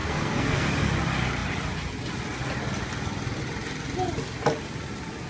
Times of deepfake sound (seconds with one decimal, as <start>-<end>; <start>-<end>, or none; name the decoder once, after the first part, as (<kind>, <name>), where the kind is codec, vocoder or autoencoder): 0.0-0.7 (codec, SNAC)